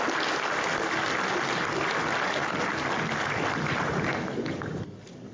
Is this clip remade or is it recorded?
recorded